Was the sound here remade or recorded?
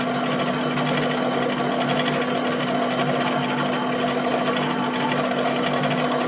recorded